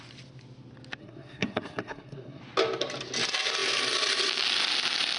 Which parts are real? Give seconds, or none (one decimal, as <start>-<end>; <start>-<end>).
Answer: 0.0-1.0; 2.4-5.2